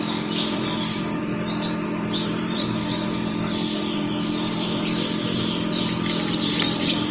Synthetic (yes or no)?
yes